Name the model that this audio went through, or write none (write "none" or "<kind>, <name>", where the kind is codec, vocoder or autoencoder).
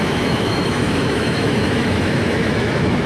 autoencoder, DAC-VAE